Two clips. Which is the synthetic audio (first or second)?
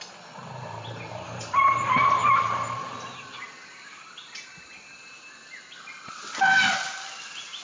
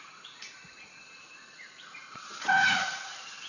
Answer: second